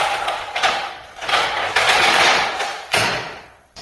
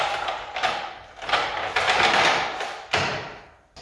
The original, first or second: second